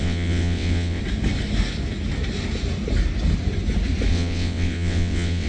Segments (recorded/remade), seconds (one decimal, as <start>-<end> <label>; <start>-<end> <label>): 0.0-1.0 remade; 1.0-4.1 recorded; 4.1-5.5 remade